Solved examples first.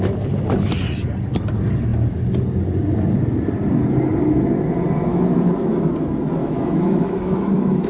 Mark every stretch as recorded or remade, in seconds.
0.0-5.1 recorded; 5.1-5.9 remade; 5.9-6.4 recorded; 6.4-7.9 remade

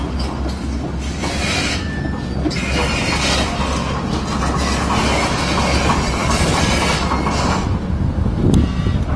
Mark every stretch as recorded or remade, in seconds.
0.0-9.2 recorded

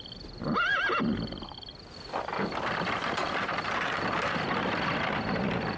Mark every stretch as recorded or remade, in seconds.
0.0-5.8 recorded

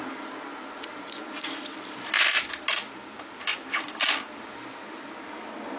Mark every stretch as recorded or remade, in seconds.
0.0-3.5 recorded; 3.5-5.8 remade

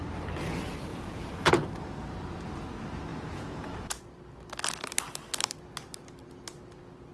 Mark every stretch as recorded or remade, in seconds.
0.0-0.9 recorded; 0.9-1.5 remade; 1.5-3.1 recorded; 3.1-4.0 remade; 4.0-7.1 recorded

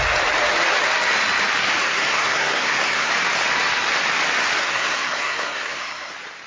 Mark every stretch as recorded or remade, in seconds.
0.0-1.8 recorded; 1.8-3.1 remade; 3.1-4.6 recorded; 4.6-6.1 remade; 6.1-6.5 recorded

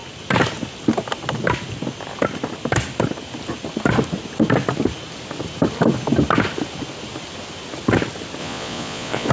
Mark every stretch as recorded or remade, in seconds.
0.0-8.4 recorded; 8.4-9.3 remade